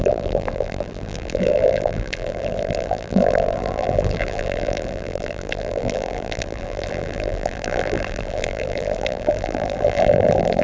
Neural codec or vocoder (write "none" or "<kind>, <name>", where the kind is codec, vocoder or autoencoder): vocoder, BigVGAN v2